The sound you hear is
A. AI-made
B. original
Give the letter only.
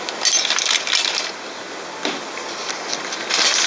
B